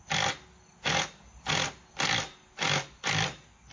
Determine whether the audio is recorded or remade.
recorded